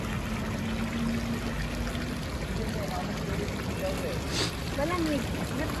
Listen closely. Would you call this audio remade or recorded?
recorded